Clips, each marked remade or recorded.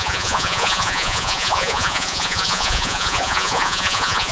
remade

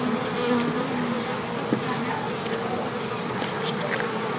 recorded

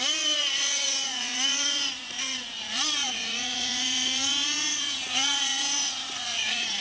remade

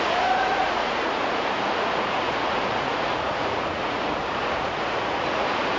remade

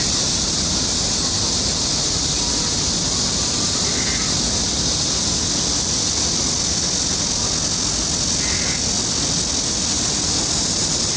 recorded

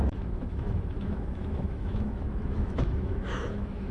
remade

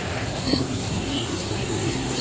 remade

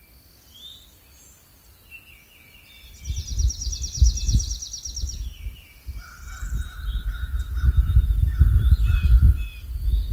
recorded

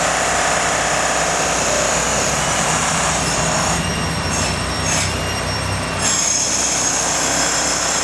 remade